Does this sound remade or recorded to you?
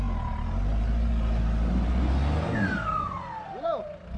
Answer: recorded